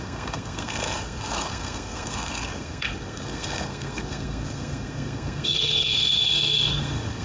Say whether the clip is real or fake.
fake